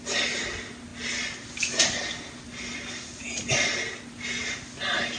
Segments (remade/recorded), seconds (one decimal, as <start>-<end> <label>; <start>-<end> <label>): 0.0-5.2 recorded